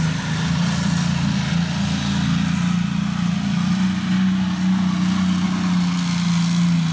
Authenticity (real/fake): real